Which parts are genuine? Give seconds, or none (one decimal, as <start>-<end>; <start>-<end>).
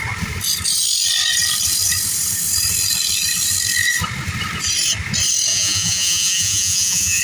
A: 0.0-5.5